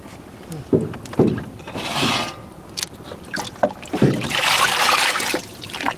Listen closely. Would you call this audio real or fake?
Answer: real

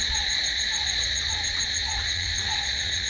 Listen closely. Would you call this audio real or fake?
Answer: fake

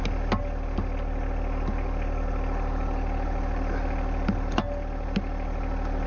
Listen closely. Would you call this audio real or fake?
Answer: real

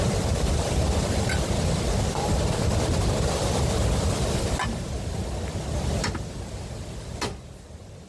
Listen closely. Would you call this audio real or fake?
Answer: real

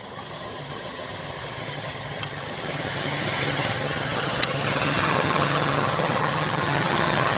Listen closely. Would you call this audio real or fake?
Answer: fake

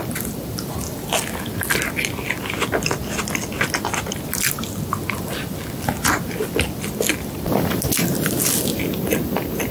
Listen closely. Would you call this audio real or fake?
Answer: real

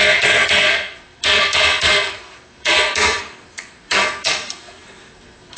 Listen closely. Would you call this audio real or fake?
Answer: fake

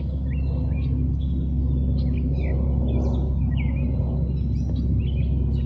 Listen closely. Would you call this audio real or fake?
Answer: real